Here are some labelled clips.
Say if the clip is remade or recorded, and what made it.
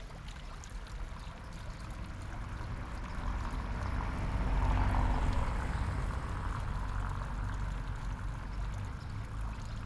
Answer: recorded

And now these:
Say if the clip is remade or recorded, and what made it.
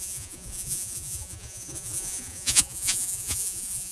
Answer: remade, vocoder, Vocos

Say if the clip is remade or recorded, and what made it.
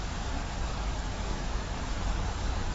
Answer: remade, codec, DAC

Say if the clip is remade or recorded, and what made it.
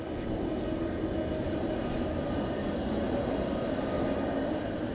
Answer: recorded